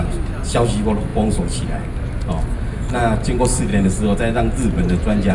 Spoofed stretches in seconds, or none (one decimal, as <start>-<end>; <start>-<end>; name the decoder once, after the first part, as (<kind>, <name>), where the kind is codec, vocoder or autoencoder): none